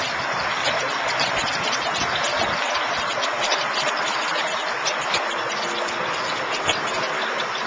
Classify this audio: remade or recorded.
recorded